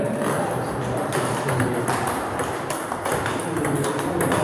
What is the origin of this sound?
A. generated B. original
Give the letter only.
A